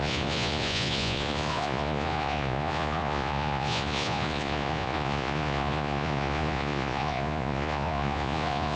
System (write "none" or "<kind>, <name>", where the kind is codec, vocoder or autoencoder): vocoder, Vocos